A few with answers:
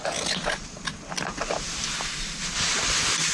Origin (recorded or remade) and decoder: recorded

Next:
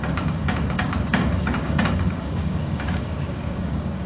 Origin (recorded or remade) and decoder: remade, codec, DAC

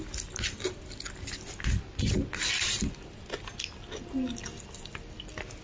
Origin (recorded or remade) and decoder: recorded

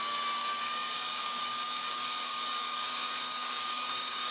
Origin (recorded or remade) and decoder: remade, codec, DAC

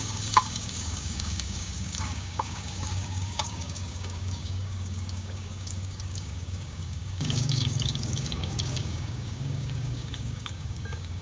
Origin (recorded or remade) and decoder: remade, codec, DAC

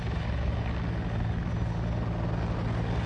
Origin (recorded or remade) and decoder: recorded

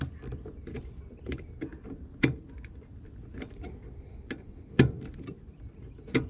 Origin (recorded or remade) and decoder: recorded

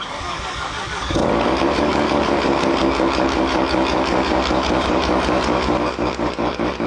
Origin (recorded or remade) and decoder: remade, codec, DAC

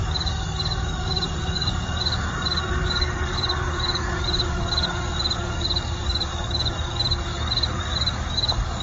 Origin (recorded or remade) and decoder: remade, codec, DAC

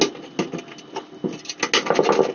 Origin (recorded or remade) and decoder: recorded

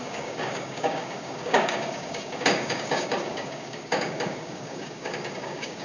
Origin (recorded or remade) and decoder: remade, codec, DAC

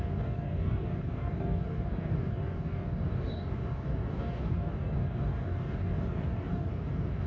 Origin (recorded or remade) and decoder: remade, codec, DAC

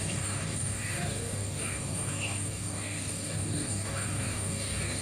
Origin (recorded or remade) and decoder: remade, codec, DAC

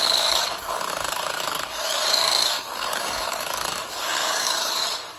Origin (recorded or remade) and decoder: remade, codec, DAC